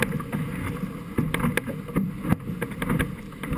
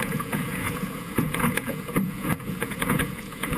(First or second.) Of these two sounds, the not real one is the second